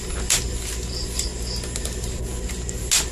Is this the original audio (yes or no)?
yes